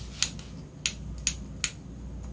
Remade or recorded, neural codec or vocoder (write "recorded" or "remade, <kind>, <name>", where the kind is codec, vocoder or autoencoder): recorded